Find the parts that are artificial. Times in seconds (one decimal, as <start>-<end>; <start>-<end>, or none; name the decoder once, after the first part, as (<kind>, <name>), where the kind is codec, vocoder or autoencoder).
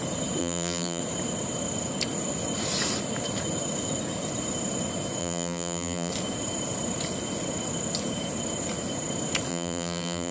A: 0.4-1.0 (vocoder, BigVGAN v2); 5.2-6.1; 9.5-10.3